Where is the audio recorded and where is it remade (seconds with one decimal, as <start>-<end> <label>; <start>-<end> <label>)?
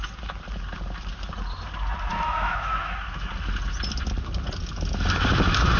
0.0-2.1 recorded; 2.1-3.3 remade; 3.3-5.8 recorded